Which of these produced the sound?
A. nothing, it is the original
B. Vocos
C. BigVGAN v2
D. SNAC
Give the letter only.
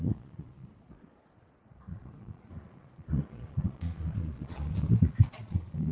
B